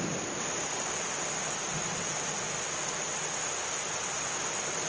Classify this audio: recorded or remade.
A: recorded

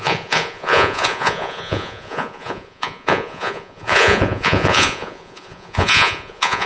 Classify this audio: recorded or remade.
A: remade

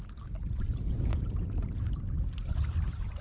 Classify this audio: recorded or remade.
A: recorded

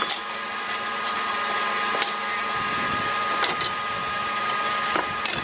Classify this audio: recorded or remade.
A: recorded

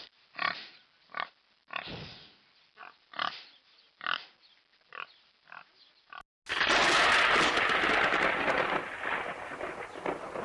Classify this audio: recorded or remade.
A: recorded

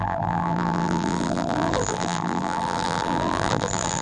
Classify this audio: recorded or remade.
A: remade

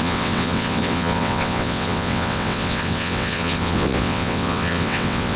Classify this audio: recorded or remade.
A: remade